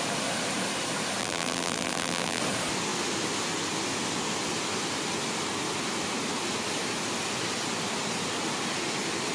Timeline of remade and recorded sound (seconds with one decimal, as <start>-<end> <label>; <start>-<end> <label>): 0.0-1.2 recorded; 1.2-2.4 remade; 2.4-9.3 recorded